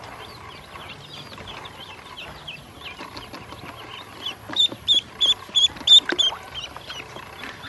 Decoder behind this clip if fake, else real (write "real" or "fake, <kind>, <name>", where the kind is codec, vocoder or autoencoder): real